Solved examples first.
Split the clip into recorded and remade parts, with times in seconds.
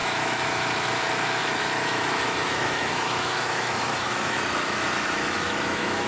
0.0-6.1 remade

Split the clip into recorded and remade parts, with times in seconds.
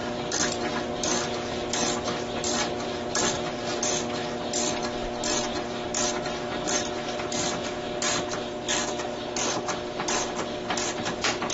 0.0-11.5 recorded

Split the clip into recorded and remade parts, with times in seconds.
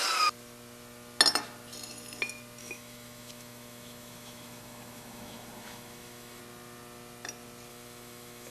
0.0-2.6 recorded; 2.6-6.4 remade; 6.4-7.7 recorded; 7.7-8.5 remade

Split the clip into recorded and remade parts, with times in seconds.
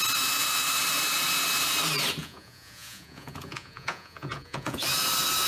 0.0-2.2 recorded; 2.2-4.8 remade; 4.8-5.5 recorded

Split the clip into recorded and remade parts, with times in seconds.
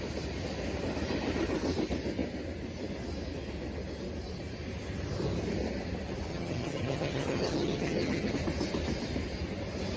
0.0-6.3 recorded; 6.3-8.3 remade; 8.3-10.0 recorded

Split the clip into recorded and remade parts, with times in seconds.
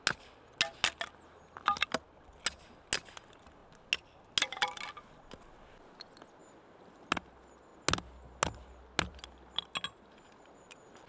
0.0-11.1 recorded